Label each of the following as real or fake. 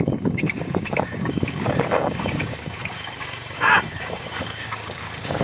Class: fake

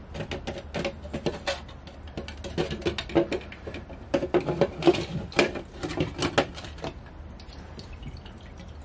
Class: real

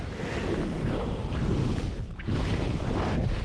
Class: real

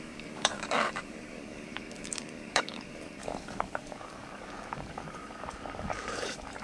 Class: fake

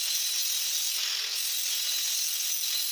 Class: real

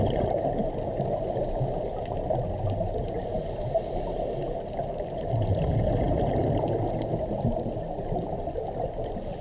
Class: real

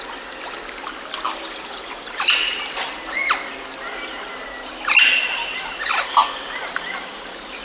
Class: real